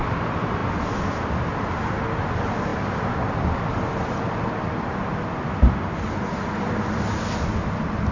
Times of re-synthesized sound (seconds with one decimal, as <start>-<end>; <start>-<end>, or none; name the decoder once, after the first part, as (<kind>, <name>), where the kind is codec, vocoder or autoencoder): none